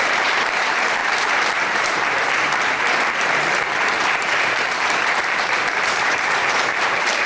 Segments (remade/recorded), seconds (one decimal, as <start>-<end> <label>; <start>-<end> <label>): 0.0-7.3 remade